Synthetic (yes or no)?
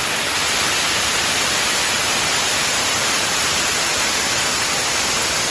no